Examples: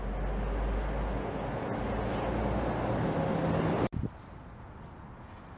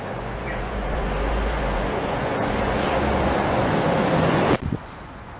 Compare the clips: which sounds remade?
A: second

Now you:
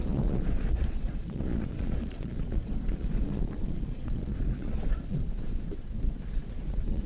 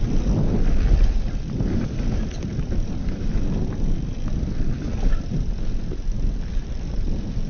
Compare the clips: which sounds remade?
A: first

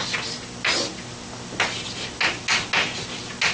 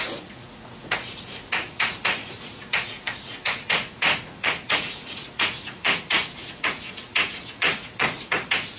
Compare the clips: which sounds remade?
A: second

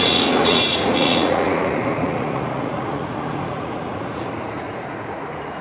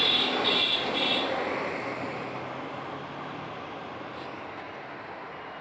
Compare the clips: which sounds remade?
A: first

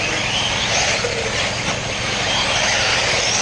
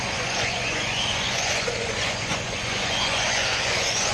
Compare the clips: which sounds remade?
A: second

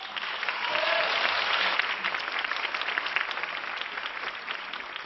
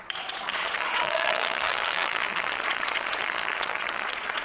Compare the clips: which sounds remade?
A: second